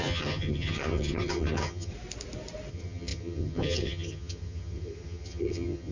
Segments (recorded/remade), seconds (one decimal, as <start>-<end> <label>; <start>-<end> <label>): 0.0-1.9 remade; 1.9-2.7 recorded; 2.7-5.9 remade